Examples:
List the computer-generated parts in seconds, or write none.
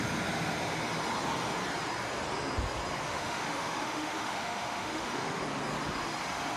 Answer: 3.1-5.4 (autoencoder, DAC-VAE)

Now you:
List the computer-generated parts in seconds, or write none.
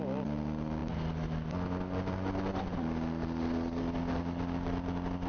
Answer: none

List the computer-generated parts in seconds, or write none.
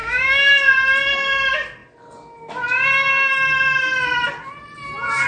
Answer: 0.0-0.5 (autoencoder, DAC-VAE)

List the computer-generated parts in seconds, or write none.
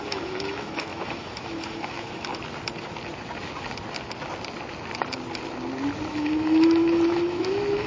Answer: 0.0-2.3 (autoencoder, DAC-VAE); 6.1-7.9